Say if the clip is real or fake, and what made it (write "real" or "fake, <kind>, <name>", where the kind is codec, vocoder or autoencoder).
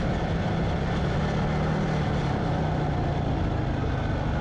real